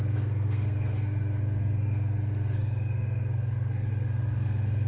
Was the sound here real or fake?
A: fake